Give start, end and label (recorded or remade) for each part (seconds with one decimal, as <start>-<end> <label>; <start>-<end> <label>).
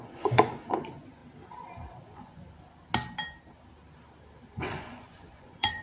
0.0-1.2 remade; 1.2-2.0 recorded; 2.0-2.4 remade; 2.4-4.5 recorded; 4.5-5.8 remade